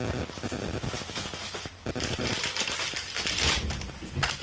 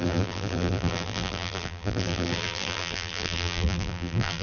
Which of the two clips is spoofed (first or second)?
second